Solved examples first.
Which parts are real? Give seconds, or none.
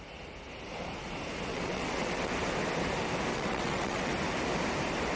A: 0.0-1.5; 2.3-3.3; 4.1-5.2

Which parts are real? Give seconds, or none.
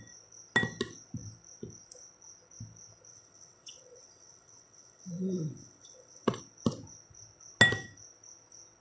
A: 0.0-3.1; 6.4-8.8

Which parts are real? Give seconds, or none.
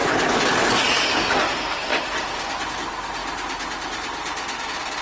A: 0.0-5.0